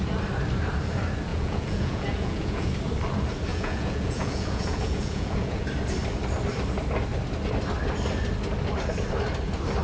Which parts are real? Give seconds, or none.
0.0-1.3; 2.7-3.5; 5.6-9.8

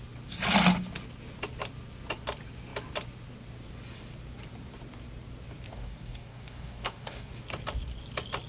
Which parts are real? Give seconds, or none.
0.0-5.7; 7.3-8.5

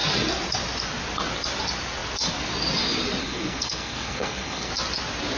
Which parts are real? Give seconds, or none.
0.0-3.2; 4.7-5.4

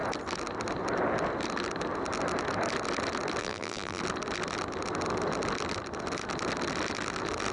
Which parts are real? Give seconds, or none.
0.0-3.4; 4.0-7.5

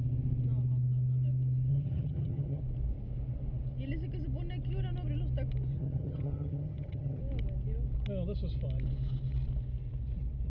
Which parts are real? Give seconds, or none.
0.0-1.7; 2.6-5.7; 7.2-10.5

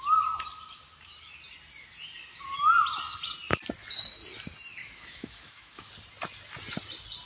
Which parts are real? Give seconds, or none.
0.0-4.8; 5.9-7.3